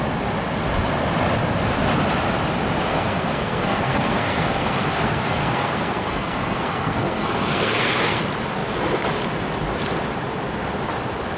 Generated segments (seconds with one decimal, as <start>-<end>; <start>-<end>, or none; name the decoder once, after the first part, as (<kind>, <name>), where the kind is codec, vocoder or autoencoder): 2.9-8.2 (codec, SNAC)